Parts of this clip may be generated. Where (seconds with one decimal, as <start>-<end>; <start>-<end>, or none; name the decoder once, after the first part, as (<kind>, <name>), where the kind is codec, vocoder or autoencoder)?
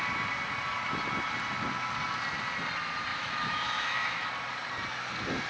3.1-4.3 (autoencoder, DAC-VAE)